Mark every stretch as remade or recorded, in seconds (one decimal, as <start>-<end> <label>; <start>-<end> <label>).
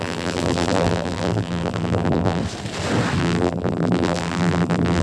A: 0.0-2.4 remade; 2.4-3.2 recorded; 3.2-5.0 remade